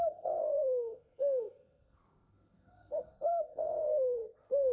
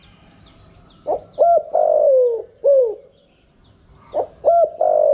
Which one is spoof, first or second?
first